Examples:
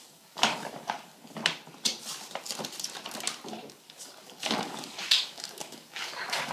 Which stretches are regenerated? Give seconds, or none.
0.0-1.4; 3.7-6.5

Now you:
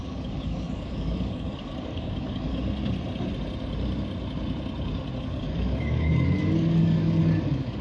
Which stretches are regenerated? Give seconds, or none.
0.0-2.5; 5.2-7.8

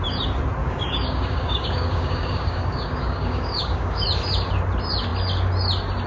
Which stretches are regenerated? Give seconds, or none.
0.6-4.0

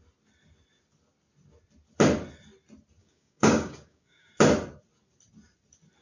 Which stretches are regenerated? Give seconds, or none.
3.0-4.3